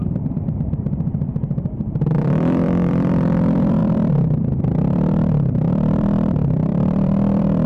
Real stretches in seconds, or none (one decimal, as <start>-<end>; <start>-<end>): none